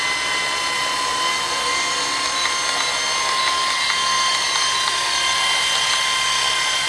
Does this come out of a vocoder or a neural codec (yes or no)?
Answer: no